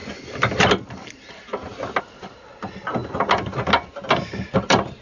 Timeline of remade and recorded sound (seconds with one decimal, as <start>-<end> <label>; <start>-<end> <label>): 0.0-5.0 recorded